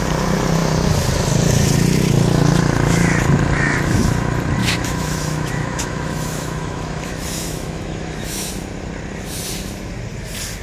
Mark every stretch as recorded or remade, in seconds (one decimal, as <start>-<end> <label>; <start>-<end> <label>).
0.0-4.6 recorded; 4.6-8.5 remade; 8.5-10.6 recorded